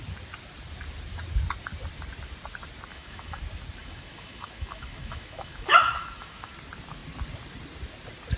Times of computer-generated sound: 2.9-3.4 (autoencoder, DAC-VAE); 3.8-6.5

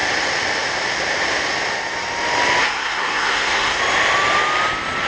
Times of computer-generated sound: 2.6-3.8 (codec, SNAC)